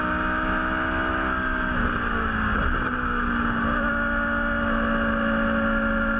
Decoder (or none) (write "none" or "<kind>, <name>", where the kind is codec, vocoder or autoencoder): none